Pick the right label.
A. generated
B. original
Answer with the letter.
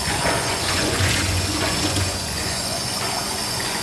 A